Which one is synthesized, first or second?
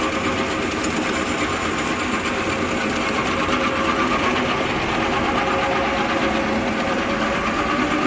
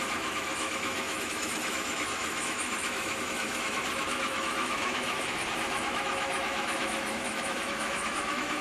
second